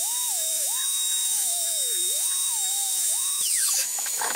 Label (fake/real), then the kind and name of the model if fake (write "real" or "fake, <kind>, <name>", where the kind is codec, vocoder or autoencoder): fake, autoencoder, DAC-VAE